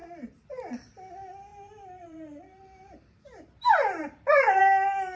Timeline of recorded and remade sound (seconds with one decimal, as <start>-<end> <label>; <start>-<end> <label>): 0.0-0.7 remade; 0.7-1.5 recorded; 1.5-4.6 remade; 4.6-5.2 recorded

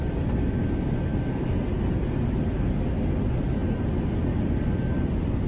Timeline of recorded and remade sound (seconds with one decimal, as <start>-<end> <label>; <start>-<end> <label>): 0.0-5.5 recorded

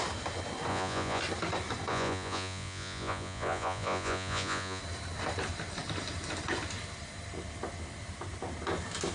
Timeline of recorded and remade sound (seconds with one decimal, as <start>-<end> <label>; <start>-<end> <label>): 0.0-0.7 recorded; 0.7-1.2 remade; 1.2-1.9 recorded; 1.9-4.8 remade; 4.8-9.1 recorded

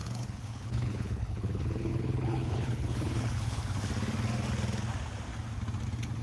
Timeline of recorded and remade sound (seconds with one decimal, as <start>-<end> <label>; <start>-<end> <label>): 0.0-3.6 remade; 3.6-6.2 recorded